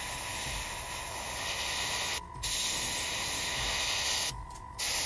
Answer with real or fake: real